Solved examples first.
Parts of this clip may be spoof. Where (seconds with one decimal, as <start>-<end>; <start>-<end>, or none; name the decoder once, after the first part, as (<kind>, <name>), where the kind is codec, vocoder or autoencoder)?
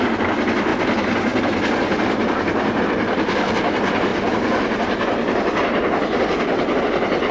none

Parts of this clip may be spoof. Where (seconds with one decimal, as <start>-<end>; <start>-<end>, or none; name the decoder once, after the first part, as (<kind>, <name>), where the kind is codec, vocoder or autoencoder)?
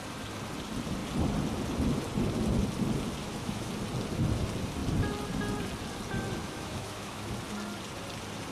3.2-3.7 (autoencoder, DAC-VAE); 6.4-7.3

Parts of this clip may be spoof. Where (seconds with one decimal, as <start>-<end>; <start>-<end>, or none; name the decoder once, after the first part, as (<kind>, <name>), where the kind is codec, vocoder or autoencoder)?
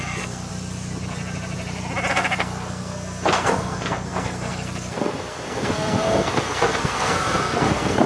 0.0-0.5 (codec, SNAC); 2.1-8.1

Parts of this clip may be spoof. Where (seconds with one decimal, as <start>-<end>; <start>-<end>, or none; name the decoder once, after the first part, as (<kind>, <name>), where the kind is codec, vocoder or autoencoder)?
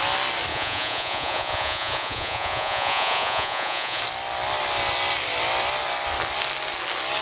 0.5-4.0 (vocoder, Vocos)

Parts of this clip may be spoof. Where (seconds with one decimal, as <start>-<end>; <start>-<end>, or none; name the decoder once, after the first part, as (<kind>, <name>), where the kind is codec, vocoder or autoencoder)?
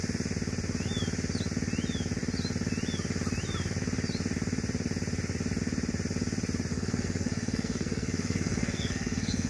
6.7-9.5 (codec, SNAC)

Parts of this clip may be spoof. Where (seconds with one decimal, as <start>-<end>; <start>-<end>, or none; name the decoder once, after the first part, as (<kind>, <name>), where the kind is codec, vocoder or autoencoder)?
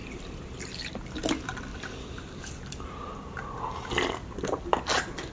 0.0-1.0 (vocoder, BigVGAN v2); 1.7-5.3